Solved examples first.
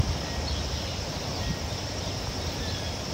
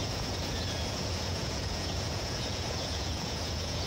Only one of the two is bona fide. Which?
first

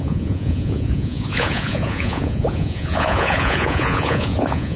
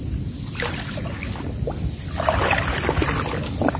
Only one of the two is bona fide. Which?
second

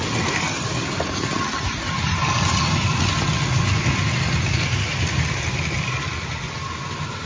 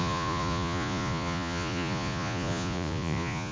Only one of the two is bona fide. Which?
first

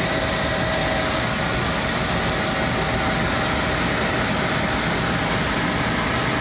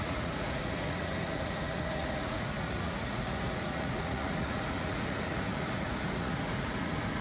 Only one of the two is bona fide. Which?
first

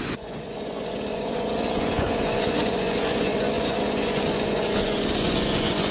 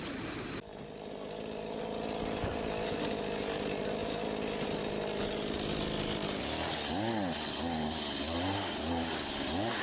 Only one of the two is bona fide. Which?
second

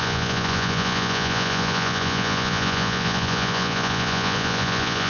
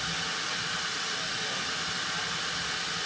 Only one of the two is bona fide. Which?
second